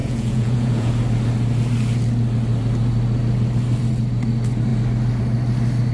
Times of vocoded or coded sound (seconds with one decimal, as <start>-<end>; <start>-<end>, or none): 0.0-0.9